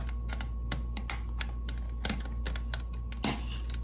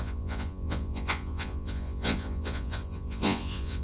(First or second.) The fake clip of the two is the second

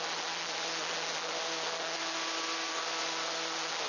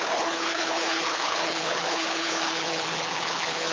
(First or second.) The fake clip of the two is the second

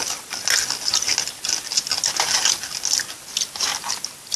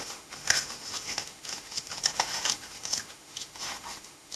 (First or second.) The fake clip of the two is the second